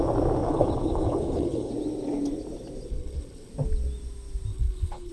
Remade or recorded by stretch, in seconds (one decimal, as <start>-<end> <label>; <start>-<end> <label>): 0.0-0.4 recorded; 0.4-1.7 remade; 1.7-2.9 recorded; 2.9-3.5 remade; 3.5-4.5 recorded; 4.5-5.1 remade